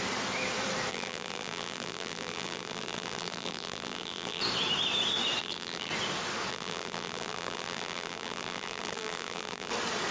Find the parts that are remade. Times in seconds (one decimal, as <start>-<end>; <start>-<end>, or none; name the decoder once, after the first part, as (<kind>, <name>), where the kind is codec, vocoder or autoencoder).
0.9-4.4 (vocoder, BigVGAN v2); 5.4-5.9; 6.5-9.7